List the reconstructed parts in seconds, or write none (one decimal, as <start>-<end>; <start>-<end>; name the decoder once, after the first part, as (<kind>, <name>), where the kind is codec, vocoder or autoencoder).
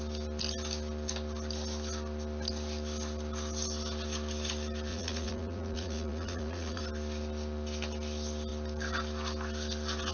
4.9-6.8 (vocoder, Vocos)